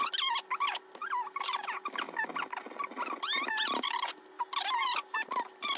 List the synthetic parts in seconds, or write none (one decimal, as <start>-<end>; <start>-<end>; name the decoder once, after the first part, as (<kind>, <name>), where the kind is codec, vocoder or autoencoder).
none